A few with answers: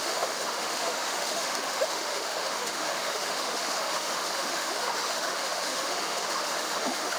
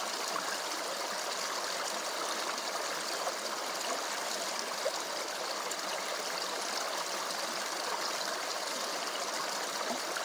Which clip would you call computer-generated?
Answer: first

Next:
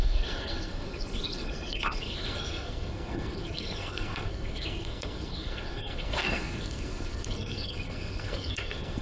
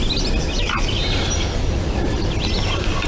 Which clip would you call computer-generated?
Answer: first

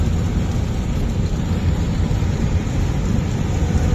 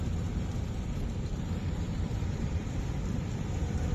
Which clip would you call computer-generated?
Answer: second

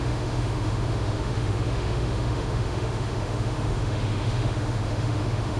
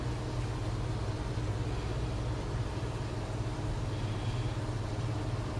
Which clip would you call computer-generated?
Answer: first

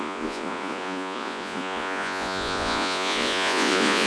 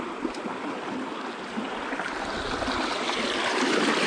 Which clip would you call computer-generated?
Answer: first